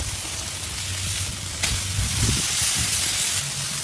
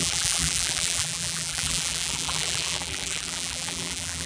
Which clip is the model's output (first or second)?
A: second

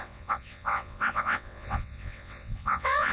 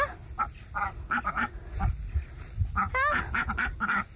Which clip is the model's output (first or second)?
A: first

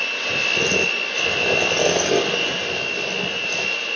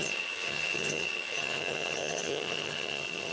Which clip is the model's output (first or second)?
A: second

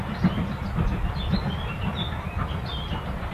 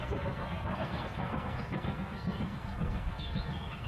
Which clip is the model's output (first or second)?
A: second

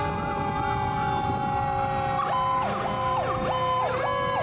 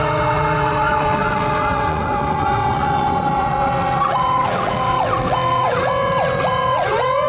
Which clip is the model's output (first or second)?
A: second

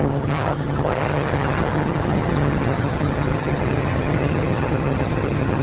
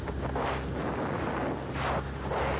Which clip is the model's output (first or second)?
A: first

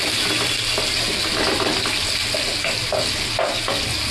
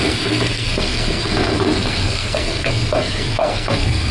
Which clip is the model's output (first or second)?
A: second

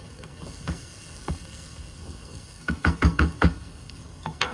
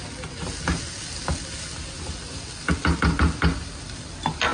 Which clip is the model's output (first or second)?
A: first